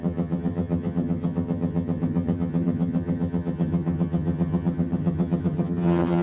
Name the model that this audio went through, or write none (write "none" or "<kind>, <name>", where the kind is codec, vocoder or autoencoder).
vocoder, HiFi-GAN